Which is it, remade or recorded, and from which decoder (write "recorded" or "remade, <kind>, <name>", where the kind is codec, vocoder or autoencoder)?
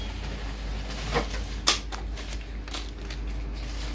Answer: recorded